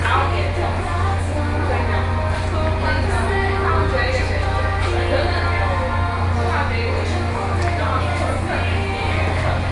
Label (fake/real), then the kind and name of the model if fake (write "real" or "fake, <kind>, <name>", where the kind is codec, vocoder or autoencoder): real